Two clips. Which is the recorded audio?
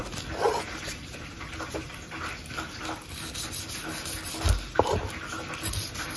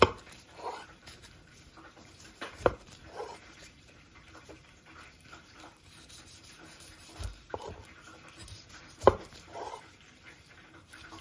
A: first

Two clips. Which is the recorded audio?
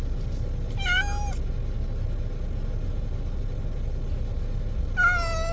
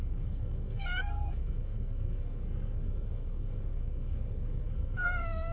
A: first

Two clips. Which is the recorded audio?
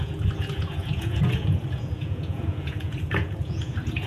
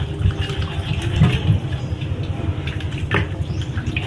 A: second